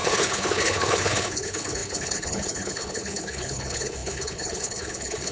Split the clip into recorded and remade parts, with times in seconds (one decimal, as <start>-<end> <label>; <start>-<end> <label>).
0.0-5.3 remade